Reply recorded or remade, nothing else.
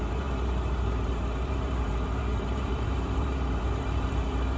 remade